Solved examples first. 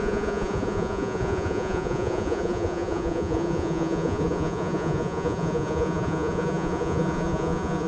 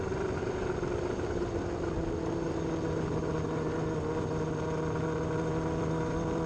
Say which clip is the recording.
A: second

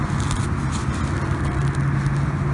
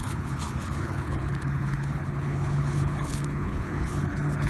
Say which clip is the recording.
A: first